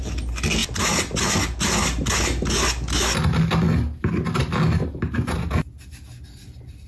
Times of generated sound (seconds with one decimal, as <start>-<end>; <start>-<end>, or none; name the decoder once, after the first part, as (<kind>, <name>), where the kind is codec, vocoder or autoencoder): none